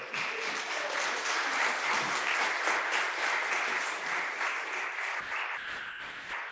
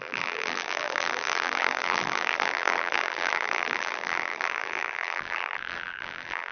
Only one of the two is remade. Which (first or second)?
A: second